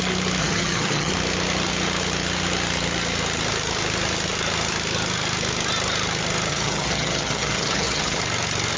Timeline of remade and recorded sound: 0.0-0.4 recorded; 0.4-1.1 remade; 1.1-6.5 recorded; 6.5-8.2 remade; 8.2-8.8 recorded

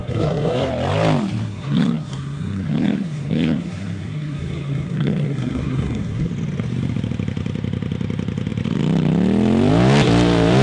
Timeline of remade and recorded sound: 0.0-0.7 remade; 0.7-1.4 recorded; 1.4-6.3 remade; 6.3-10.6 recorded